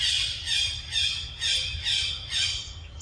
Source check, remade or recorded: recorded